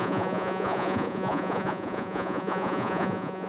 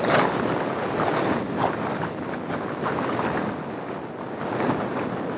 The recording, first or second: second